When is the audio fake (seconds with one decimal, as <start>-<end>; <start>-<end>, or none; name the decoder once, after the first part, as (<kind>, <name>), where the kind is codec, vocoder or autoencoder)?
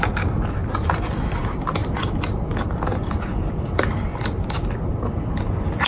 0.6-1.4 (vocoder, BigVGAN v2); 1.8-3.2; 4.1-4.7